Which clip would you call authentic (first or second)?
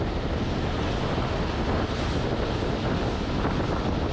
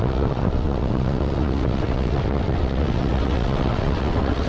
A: first